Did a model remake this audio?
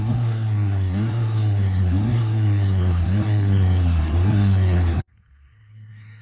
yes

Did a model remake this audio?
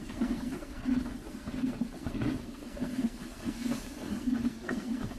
yes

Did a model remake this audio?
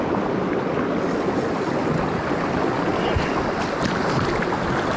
no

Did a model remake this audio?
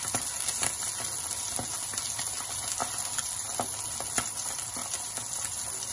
no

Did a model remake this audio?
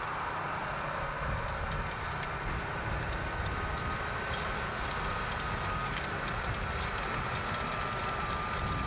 no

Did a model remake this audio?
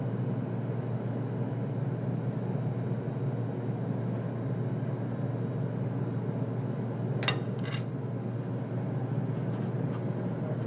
no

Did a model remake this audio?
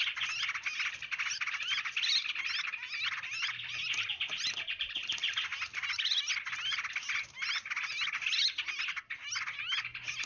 no